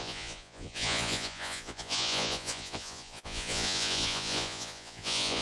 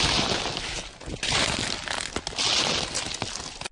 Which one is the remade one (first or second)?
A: first